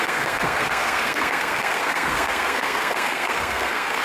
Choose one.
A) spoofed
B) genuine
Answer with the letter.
A